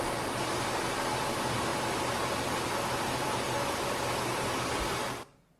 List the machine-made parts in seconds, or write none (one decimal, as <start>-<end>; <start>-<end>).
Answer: none